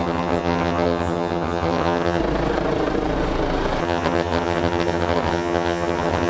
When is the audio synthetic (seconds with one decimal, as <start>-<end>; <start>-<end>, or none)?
0.0-2.2; 3.8-6.3